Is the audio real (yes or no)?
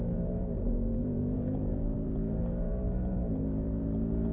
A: no